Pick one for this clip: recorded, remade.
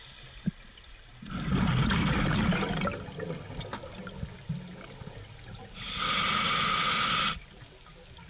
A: recorded